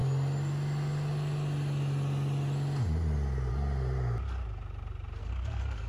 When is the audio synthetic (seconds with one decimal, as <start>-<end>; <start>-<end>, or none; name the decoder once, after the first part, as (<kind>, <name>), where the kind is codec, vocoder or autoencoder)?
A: 5.2-5.9 (codec, SNAC)